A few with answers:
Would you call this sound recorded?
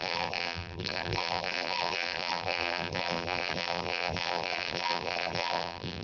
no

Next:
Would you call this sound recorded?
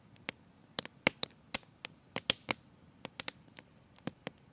yes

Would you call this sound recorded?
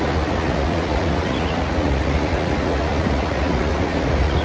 no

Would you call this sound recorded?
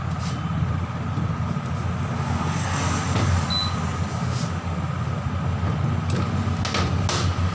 yes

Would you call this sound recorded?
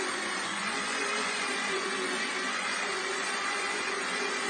no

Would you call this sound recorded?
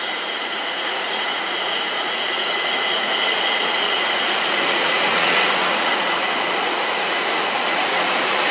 no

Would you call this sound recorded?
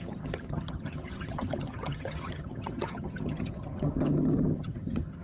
no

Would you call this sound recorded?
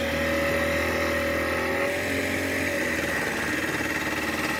yes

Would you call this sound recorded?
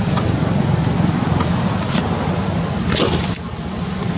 yes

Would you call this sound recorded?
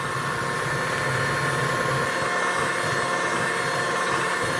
yes